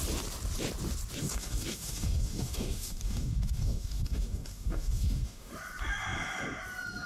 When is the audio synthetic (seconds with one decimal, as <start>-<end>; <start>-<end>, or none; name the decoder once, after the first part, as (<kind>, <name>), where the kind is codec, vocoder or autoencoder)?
1.2-5.5 (codec, DAC)